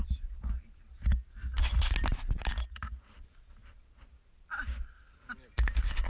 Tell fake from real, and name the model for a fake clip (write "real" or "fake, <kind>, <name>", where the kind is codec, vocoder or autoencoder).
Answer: real